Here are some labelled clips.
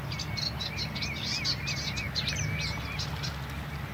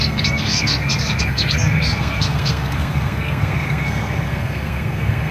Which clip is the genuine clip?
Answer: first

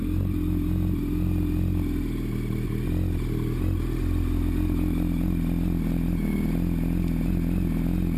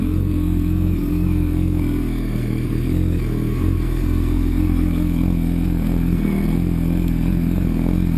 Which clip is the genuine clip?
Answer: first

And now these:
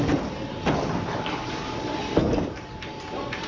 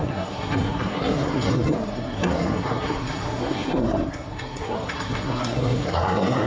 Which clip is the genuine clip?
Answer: first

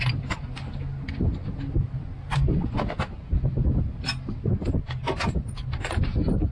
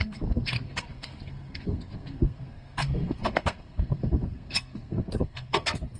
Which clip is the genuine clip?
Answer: first